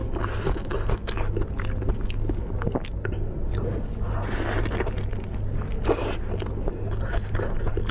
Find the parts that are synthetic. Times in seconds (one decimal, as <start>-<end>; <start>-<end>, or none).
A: none